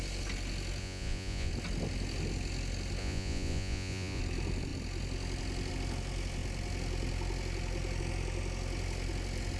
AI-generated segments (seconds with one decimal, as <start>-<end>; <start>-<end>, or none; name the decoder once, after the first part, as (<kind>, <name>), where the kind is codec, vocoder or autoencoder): 0.8-1.5 (vocoder, Vocos); 3.0-4.2